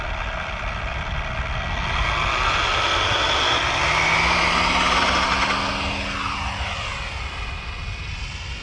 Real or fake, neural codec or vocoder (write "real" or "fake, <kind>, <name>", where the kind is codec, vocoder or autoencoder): real